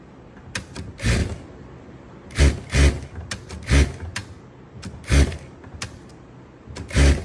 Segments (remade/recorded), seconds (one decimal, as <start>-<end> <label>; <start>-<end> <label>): 0.0-7.2 recorded